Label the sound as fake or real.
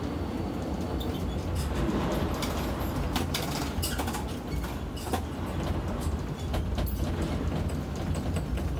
real